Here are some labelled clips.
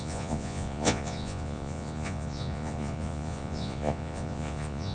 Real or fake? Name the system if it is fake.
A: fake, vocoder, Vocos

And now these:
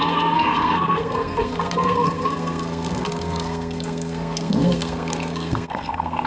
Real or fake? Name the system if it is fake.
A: fake, codec, SNAC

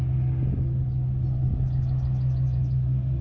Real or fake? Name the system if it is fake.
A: real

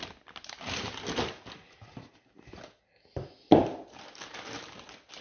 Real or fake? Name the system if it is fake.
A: real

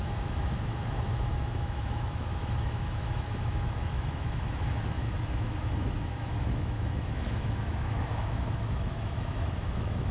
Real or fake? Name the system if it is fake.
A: fake, autoencoder, DAC-VAE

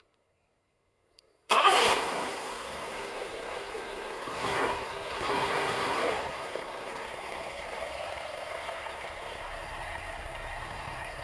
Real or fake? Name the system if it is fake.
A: fake, codec, SNAC